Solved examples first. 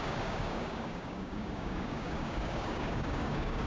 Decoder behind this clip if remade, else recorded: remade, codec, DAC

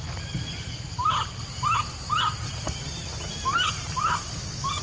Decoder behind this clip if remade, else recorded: recorded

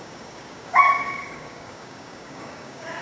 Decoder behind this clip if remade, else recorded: remade, codec, DAC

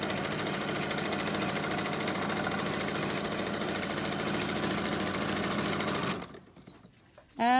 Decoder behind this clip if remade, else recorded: recorded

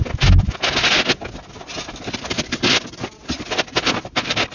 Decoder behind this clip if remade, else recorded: recorded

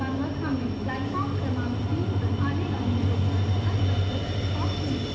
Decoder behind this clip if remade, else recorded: recorded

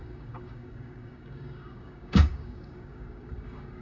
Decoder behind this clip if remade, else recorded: remade, codec, DAC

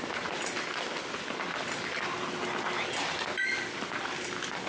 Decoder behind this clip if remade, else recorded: recorded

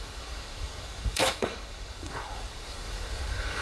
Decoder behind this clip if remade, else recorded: remade, codec, DAC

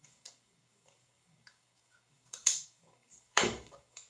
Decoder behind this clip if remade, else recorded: remade, codec, DAC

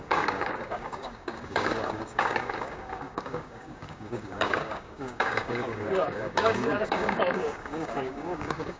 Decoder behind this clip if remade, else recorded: remade, codec, DAC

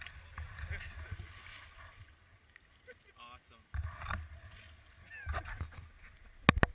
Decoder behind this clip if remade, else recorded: recorded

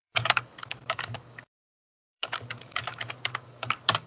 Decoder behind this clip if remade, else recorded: remade, codec, DAC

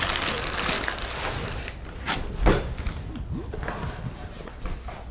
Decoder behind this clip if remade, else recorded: recorded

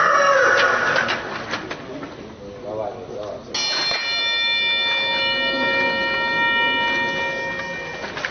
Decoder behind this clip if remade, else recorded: recorded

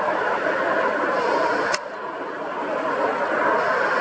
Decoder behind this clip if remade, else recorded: recorded